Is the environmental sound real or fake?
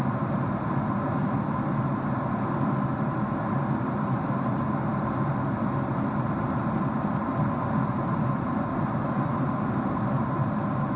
real